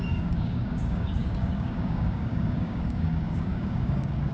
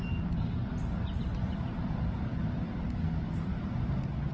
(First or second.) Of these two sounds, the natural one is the second